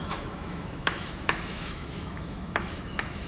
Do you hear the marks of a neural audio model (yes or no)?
yes